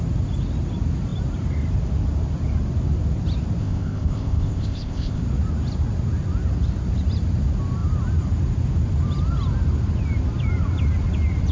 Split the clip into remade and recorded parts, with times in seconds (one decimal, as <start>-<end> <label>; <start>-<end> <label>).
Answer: 0.0-3.6 recorded; 3.6-5.2 remade; 5.2-11.5 recorded

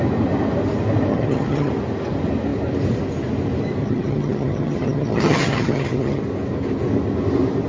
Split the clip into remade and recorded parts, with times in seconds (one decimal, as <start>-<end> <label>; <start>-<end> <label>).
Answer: 0.0-1.1 recorded; 1.1-1.7 remade; 1.7-3.8 recorded; 3.8-6.2 remade; 6.2-7.7 recorded

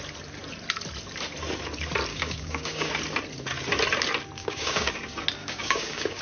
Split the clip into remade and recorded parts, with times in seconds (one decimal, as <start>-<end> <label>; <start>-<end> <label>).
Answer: 0.0-2.1 recorded; 2.1-2.9 remade; 2.9-4.4 recorded; 4.4-4.9 remade; 4.9-5.4 recorded; 5.4-6.2 remade

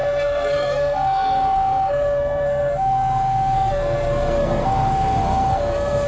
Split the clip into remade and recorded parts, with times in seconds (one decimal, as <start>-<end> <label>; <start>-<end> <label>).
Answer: 0.0-6.1 remade

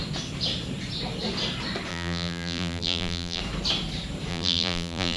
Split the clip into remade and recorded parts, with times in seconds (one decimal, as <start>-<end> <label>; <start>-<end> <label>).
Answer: 0.0-1.9 recorded; 1.9-3.4 remade; 3.4-4.3 recorded; 4.3-5.2 remade

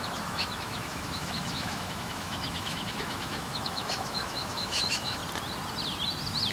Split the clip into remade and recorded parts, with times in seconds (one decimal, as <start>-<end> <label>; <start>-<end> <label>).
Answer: 0.0-5.2 remade; 5.2-6.5 recorded

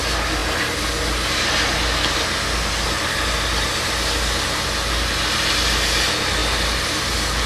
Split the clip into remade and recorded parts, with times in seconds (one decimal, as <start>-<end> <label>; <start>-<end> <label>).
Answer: 0.0-7.5 recorded

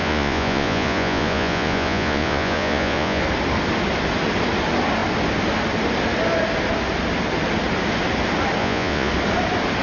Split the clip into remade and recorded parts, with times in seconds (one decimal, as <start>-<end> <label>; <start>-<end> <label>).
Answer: 0.0-3.2 remade; 3.2-8.6 recorded; 8.6-9.1 remade; 9.1-9.8 recorded